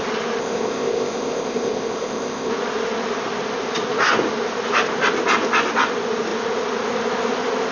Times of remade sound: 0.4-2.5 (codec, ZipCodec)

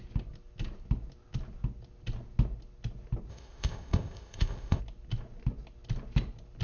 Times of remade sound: 3.3-4.8 (codec, ZipCodec)

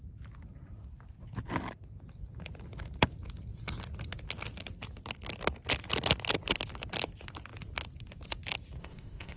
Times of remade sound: 8.8-9.4 (codec, ZipCodec)

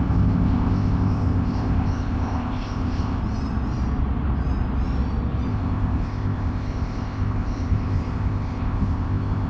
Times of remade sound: 0.0-3.2 (codec, ZipCodec); 5.5-9.5

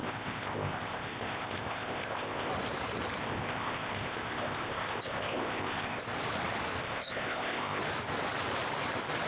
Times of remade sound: 0.0-2.5 (codec, ZipCodec); 3.2-6.0; 6.8-7.8

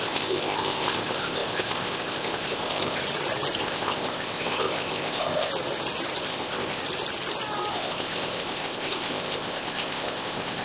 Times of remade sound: 0.0-3.0 (codec, ZipCodec); 3.6-5.5; 6.2-6.8; 7.7-10.6

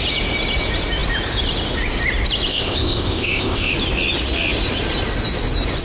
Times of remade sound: 2.5-3.7 (codec, ZipCodec)